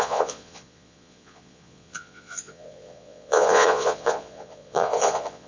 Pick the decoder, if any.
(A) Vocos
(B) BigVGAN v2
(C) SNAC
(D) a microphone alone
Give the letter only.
A